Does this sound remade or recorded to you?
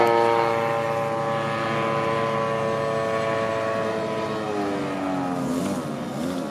recorded